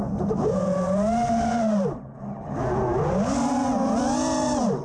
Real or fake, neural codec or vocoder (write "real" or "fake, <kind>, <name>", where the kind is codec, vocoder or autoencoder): real